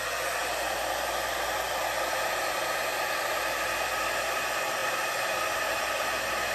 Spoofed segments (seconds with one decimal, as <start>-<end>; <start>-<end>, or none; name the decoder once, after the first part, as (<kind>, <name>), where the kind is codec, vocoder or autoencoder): 0.4-1.9 (vocoder, BigVGAN v2)

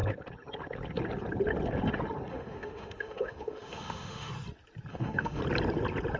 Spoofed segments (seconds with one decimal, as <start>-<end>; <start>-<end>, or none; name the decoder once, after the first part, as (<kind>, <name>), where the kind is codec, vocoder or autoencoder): 2.3-4.3 (autoencoder, DAC-VAE); 4.9-5.4

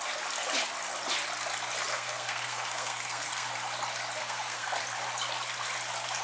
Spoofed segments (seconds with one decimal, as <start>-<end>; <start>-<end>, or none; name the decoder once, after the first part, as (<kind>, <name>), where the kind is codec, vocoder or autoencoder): 1.9-3.5 (codec, SNAC); 4.2-4.8

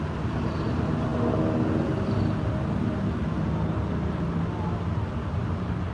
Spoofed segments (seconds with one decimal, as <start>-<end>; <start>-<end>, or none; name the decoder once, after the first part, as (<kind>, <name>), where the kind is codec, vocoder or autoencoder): none